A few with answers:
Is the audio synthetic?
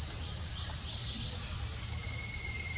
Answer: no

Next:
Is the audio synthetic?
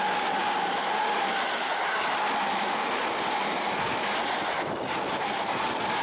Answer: no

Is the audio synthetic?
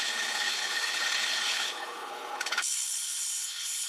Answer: yes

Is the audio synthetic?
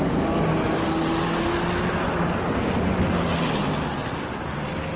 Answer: no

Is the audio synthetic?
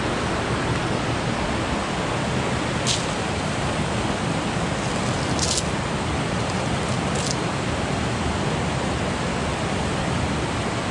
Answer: no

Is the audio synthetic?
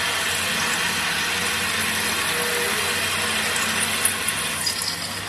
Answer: no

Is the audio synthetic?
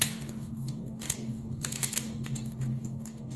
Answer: yes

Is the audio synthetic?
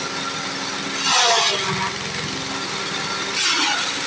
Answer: no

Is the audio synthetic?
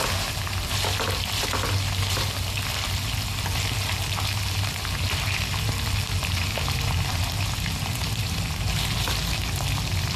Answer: no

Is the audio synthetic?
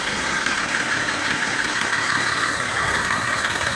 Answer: yes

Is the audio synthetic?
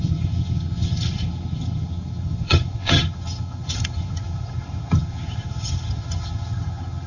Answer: yes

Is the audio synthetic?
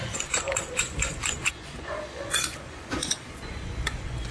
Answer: yes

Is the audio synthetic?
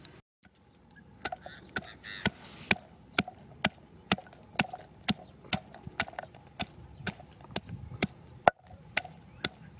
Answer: no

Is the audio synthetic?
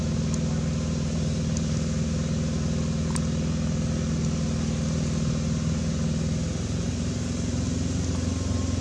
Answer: no